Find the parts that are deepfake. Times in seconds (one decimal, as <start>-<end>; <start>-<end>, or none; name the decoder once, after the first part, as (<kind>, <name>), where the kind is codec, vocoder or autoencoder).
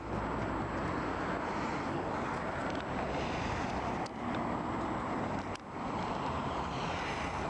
none